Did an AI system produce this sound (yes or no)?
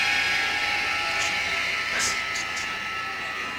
no